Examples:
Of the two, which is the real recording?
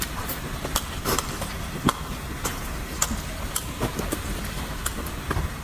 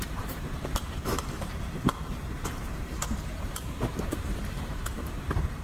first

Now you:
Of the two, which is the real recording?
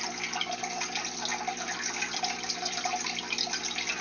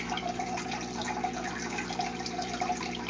first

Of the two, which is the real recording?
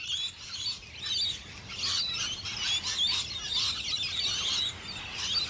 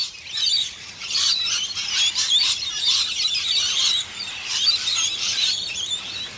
first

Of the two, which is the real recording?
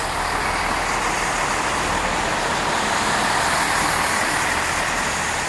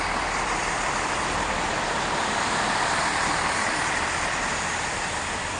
first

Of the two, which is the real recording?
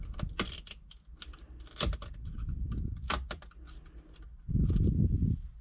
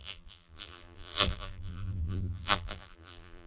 first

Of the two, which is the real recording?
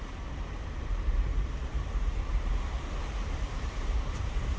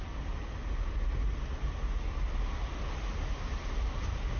second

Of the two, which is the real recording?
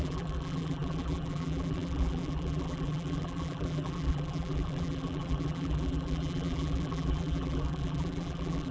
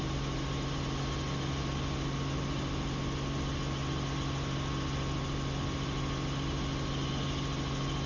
second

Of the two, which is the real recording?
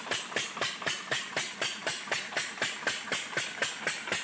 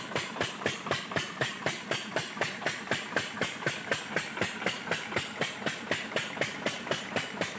first